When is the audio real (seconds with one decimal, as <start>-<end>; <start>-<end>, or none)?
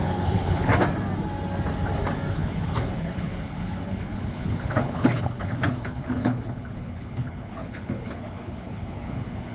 0.7-2.3